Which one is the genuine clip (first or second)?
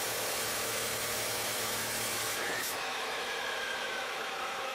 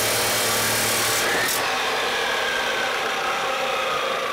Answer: second